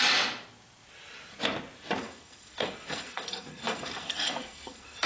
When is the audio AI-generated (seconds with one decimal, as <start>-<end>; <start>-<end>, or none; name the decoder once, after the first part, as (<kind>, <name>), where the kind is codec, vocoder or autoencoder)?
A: 2.0-5.1 (codec, SNAC)